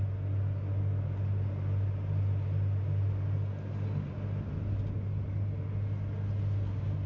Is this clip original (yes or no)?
yes